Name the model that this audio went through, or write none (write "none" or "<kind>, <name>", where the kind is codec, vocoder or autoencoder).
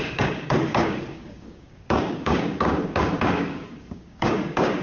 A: codec, DAC